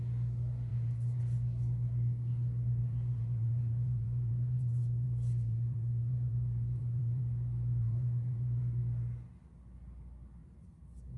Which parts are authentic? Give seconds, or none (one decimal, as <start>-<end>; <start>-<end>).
0.0-0.7; 1.2-2.8; 7.2-7.8; 8.6-11.2